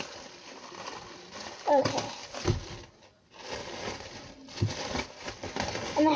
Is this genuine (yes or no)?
yes